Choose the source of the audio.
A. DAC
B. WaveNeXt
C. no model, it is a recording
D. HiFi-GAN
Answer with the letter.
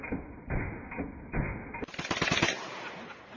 C